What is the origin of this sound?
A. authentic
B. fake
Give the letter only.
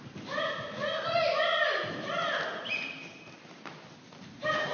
A